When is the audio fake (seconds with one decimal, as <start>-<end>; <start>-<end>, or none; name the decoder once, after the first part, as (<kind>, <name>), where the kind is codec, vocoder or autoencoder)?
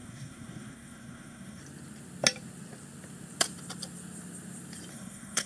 0.0-1.6 (codec, SNAC); 4.9-5.5